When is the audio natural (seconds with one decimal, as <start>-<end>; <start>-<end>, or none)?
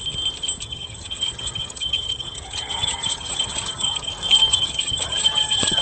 0.0-0.6; 4.1-4.5